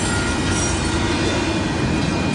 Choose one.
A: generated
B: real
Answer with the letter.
B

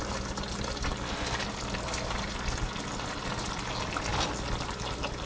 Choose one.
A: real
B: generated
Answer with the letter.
A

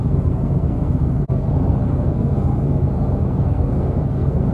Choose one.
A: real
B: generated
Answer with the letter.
B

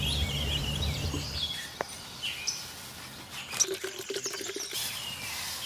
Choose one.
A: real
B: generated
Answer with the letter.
A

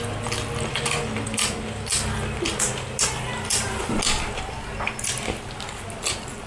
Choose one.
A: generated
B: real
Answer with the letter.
B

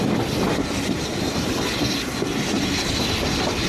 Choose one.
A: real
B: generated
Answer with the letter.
A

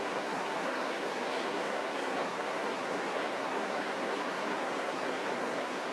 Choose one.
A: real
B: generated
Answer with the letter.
B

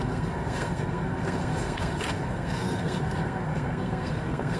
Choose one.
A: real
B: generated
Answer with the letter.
B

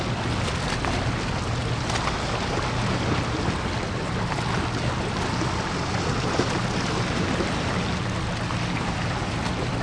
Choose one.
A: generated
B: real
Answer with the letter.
B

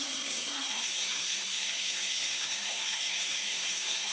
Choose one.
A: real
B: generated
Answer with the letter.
B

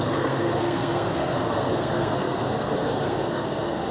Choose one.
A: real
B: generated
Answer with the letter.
B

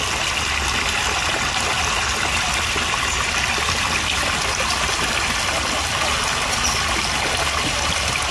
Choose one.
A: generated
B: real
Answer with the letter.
B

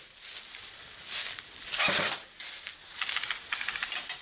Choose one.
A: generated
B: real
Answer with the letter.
B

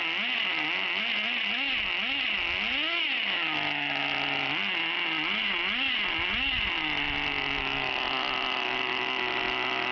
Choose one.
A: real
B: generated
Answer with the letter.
A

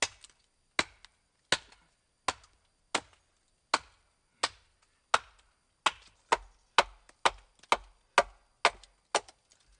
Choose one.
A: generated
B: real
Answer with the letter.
B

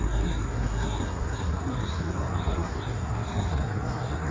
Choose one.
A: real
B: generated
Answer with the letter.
B